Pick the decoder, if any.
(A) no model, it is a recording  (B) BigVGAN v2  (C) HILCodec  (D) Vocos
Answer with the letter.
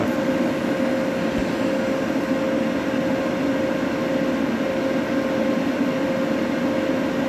A